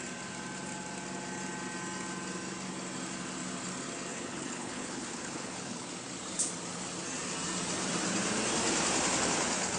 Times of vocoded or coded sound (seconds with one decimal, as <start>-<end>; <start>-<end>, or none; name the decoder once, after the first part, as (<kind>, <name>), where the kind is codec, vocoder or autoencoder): 4.1-5.9 (codec, HILCodec)